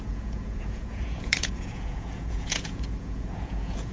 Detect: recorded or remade remade